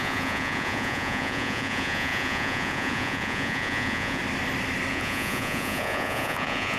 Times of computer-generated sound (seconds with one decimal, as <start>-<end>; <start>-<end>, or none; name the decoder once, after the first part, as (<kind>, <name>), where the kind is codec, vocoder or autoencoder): 0.0-4.2 (vocoder, Vocos); 4.9-6.8